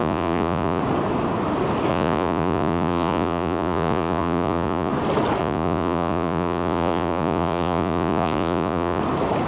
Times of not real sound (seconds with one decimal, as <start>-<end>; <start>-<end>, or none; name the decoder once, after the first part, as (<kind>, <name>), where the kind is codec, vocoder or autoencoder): 0.0-0.8 (vocoder, Vocos); 1.9-4.9; 5.4-9.0